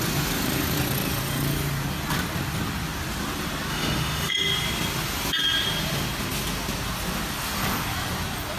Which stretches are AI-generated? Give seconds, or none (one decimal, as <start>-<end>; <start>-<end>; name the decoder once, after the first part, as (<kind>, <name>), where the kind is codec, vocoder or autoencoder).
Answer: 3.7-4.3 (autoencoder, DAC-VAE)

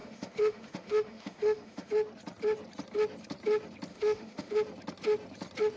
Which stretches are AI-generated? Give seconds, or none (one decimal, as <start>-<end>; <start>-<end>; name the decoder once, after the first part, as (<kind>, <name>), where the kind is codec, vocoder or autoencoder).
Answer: 0.0-1.9 (autoencoder, DAC-VAE); 3.9-4.5

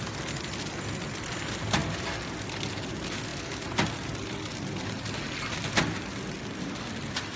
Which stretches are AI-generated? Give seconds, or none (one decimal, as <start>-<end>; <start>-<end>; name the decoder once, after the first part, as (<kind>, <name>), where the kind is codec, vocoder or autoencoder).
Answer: none

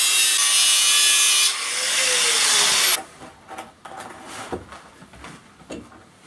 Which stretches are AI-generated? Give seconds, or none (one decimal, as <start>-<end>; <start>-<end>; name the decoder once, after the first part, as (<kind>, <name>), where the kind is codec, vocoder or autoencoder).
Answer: none

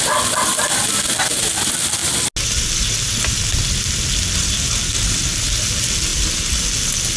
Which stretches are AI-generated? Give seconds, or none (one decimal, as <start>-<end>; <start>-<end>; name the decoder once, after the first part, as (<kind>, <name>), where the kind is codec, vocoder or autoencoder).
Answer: none